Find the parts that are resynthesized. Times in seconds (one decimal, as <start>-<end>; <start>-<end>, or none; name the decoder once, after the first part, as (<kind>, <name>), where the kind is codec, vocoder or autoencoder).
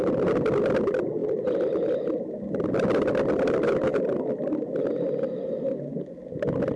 none